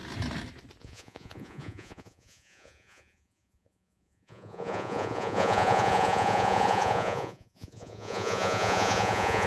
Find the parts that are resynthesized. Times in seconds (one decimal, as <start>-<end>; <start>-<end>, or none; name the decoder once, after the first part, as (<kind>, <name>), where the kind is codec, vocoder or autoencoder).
0.8-9.5 (vocoder, Vocos)